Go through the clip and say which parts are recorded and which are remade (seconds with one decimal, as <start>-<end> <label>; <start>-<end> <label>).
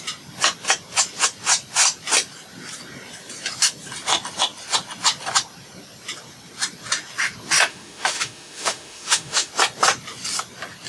0.0-7.7 recorded; 7.7-9.5 remade; 9.5-10.9 recorded